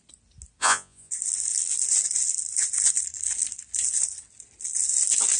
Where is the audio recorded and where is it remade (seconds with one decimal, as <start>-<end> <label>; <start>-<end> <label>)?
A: 0.0-0.6 recorded; 0.6-1.1 remade; 1.1-5.4 recorded

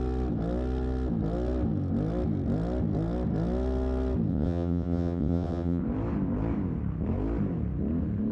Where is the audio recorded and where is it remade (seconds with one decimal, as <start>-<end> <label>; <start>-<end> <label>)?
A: 0.0-4.3 recorded; 4.3-5.8 remade; 5.8-8.3 recorded

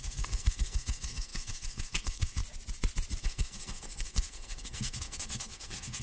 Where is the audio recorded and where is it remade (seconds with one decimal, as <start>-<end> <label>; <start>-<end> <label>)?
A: 0.0-2.4 remade; 2.4-3.2 recorded; 3.2-6.0 remade

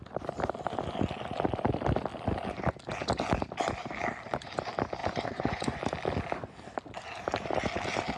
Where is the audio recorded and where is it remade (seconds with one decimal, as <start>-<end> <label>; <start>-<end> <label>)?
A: 0.0-5.0 recorded; 5.0-5.8 remade; 5.8-8.2 recorded

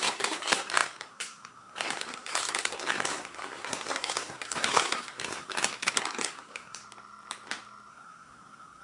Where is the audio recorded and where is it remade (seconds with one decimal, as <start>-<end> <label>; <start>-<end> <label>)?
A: 0.0-6.8 remade; 6.8-7.9 recorded; 7.9-8.8 remade

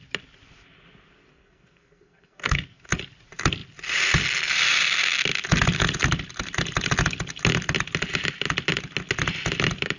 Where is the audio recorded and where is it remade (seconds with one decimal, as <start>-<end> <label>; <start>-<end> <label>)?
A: 0.0-1.3 recorded; 1.3-2.9 remade; 2.9-10.0 recorded

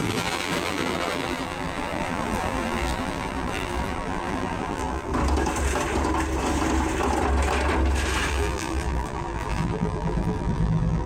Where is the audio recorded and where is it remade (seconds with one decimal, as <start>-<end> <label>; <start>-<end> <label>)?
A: 0.0-5.1 remade; 5.1-8.3 recorded; 8.3-11.1 remade

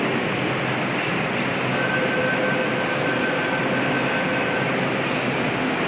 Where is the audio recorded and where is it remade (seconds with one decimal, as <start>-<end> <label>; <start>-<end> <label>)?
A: 0.0-5.9 recorded